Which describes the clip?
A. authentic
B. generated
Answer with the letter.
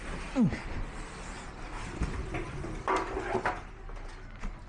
A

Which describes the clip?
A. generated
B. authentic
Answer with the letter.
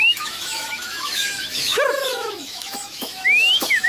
A